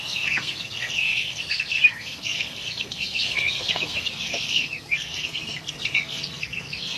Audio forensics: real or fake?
fake